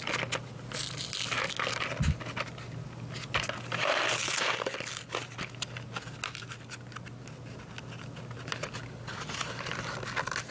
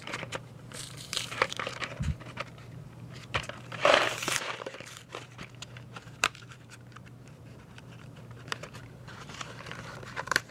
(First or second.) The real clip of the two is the first